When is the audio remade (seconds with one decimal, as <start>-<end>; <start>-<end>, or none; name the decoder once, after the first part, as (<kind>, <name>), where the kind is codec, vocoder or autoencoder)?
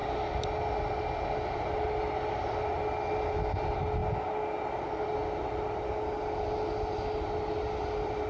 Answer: none